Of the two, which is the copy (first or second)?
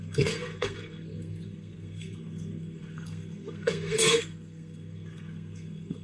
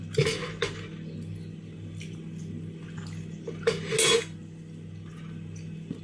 first